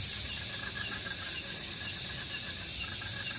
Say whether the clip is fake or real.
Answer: real